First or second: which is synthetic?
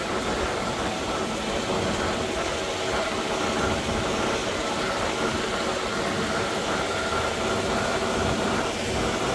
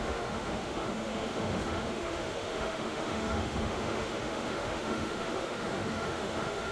second